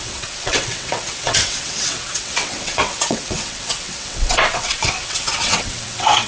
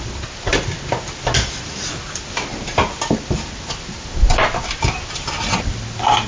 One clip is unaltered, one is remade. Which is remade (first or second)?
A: first